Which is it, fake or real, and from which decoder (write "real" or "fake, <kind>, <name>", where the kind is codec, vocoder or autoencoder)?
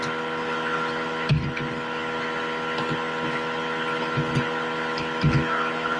real